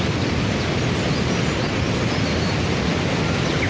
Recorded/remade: recorded